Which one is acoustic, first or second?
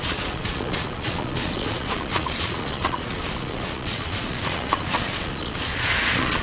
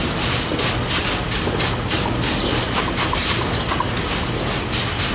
second